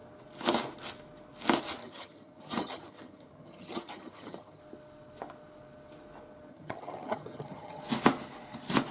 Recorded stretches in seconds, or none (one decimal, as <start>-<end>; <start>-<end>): 0.0-1.8; 4.6-6.5; 7.8-8.9